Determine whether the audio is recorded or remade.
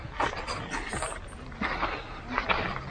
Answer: recorded